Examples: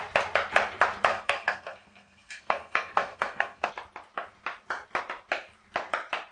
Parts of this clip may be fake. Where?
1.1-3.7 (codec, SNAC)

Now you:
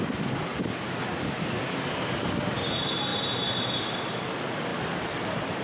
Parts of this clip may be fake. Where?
4.7-5.6 (vocoder, BigVGAN v2)